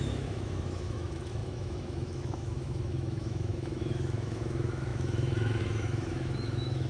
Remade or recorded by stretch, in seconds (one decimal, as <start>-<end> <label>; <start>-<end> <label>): 0.0-6.9 remade